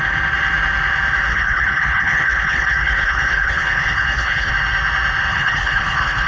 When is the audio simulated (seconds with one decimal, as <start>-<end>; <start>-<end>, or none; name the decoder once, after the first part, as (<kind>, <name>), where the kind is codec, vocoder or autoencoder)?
1.3-4.5 (codec, HILCodec); 5.3-6.3